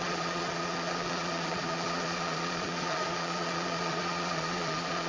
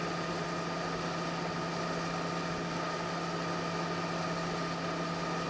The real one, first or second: second